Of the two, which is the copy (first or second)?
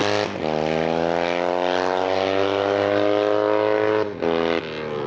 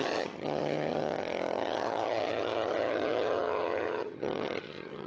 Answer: second